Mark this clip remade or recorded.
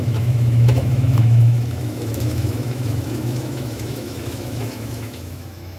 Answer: remade